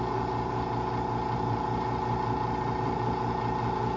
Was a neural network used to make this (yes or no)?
no